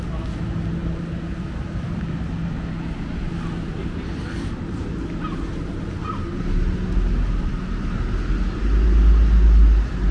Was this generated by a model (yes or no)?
no